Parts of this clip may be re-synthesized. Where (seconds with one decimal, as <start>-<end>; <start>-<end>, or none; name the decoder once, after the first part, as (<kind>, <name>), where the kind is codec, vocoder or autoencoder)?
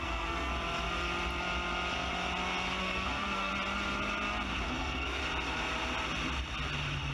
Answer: 0.0-0.5 (codec, SNAC); 2.8-3.5; 4.7-5.2